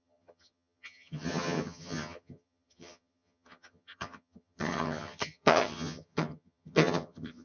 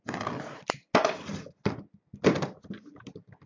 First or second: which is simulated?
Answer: first